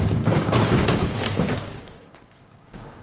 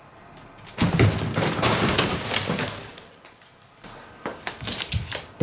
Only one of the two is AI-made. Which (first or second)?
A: first